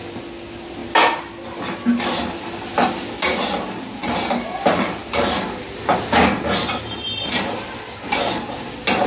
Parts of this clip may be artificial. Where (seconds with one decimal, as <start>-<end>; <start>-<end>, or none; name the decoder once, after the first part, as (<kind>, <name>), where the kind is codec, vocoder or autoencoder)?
none